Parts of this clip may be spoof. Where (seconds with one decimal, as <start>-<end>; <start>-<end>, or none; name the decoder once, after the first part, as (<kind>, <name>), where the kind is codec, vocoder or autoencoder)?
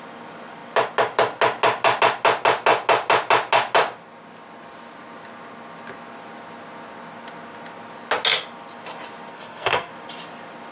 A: 9.3-9.9 (codec, SNAC)